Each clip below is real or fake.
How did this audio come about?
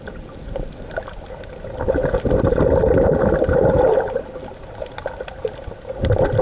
real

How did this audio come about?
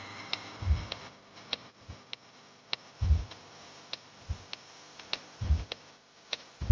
real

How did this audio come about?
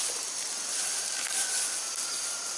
real